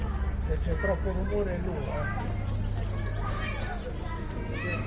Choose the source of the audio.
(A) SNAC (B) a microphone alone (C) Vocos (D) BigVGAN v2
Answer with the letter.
B